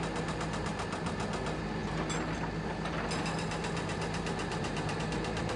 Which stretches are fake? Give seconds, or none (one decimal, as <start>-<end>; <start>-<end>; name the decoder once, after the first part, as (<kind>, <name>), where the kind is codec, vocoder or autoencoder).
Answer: none